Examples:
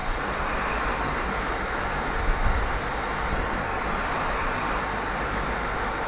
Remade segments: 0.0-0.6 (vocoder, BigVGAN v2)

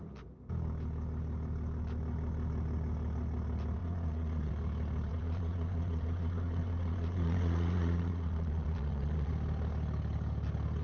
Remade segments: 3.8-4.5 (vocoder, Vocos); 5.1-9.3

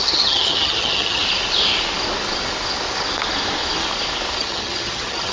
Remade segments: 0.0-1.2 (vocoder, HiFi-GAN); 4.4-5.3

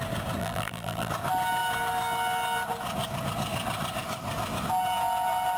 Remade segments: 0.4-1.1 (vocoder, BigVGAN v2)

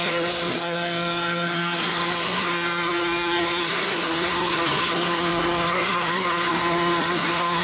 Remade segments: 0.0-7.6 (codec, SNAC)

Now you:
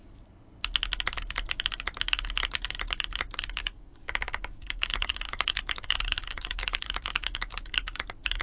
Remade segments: 3.6-8.4 (codec, DAC)